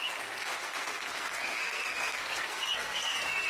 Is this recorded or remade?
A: remade